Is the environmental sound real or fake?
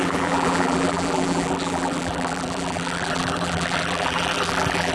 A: fake